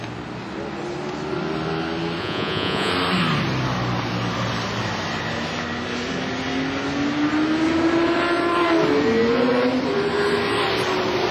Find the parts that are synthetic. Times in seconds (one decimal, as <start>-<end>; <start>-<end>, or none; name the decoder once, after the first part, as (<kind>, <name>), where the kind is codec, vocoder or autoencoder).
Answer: 2.2-2.9 (vocoder, Vocos)